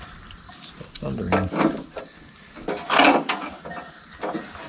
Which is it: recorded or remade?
recorded